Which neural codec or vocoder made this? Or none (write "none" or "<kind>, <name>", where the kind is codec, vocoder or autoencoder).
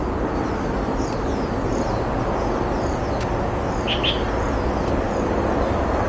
none